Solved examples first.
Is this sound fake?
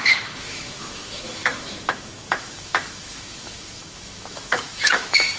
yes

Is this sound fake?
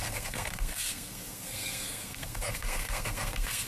yes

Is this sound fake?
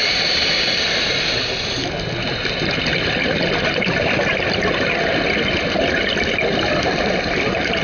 no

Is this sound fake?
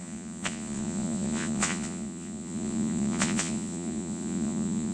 yes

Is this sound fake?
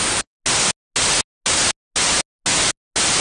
no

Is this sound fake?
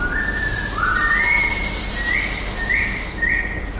no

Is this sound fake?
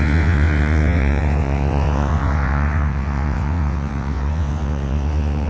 yes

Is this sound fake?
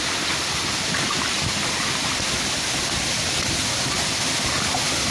no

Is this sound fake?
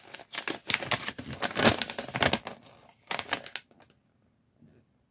no